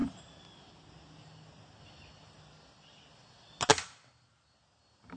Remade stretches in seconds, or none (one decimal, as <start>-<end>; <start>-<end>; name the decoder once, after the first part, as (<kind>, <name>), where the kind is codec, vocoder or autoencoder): none